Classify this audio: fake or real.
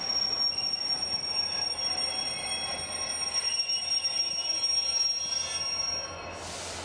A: real